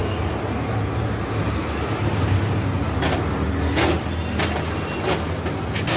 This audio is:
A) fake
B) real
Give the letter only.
B